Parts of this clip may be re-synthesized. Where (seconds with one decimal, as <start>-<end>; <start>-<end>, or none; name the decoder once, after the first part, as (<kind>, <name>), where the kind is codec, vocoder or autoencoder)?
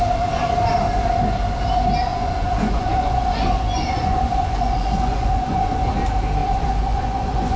2.1-5.9 (vocoder, Vocos); 6.4-7.6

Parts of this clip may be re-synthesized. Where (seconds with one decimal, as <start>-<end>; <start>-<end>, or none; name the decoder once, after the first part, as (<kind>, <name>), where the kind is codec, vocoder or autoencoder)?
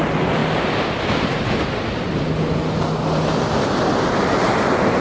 none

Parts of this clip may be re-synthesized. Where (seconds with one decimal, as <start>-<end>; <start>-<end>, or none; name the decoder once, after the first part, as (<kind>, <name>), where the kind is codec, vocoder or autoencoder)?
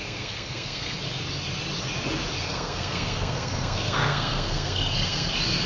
0.0-1.0 (codec, SNAC); 2.4-5.3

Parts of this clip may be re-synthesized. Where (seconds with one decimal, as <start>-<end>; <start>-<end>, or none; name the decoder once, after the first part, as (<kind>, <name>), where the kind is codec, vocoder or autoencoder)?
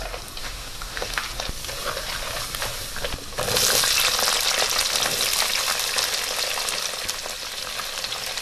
0.4-1.2 (autoencoder, DAC-VAE)